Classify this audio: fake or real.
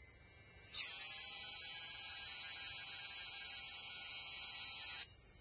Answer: real